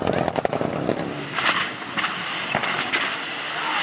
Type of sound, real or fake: real